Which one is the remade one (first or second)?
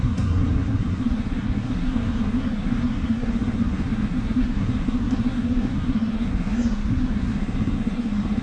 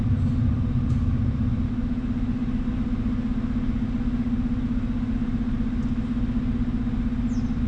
first